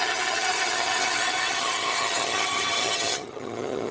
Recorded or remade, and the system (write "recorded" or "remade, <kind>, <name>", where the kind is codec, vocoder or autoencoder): remade, vocoder, HiFi-GAN